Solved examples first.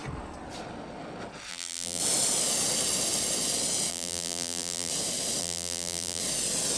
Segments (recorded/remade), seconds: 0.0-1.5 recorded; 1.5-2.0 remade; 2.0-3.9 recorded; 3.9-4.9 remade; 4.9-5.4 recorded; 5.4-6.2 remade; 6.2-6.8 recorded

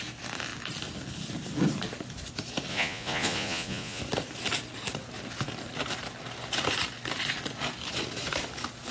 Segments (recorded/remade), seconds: 0.0-2.7 recorded; 2.7-4.0 remade; 4.0-8.9 recorded

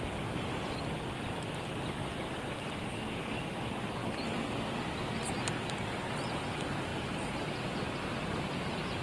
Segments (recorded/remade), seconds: 0.0-2.0 recorded; 2.0-2.9 remade; 2.9-4.0 recorded; 4.0-5.1 remade; 5.1-9.0 recorded

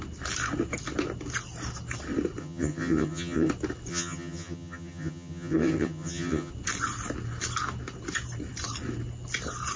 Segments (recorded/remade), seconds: 0.0-2.4 recorded; 2.4-3.5 remade; 3.5-3.9 recorded; 3.9-6.5 remade; 6.5-9.8 recorded